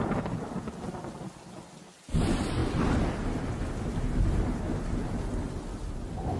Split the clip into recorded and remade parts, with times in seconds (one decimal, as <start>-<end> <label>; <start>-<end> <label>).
0.0-6.4 recorded